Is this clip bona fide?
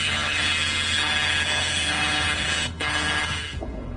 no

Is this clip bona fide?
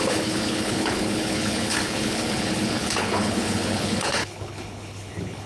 no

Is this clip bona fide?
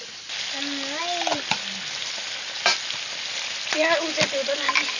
yes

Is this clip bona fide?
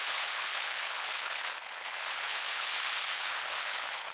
no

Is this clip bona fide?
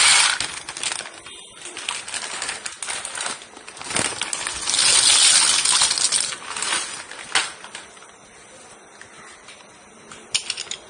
yes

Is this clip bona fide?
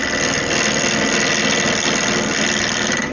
yes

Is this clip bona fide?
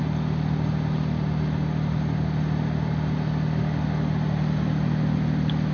yes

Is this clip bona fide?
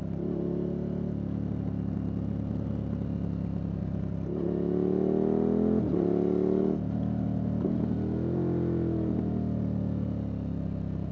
yes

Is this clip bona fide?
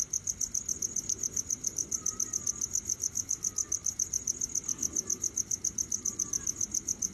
yes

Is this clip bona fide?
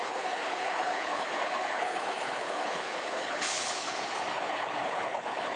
no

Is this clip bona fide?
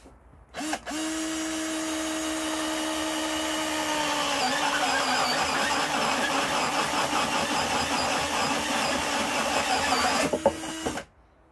yes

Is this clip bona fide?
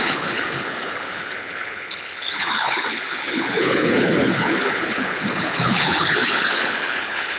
no